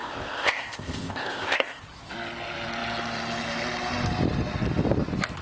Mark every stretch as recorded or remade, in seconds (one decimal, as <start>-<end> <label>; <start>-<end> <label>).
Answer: 0.0-1.8 remade; 1.8-5.4 recorded